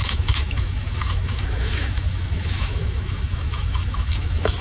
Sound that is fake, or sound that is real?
fake